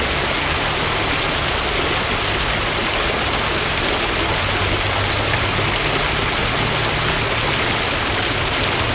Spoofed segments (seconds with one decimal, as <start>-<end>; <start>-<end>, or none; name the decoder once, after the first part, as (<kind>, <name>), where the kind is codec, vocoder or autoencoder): none